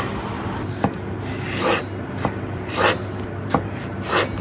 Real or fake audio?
real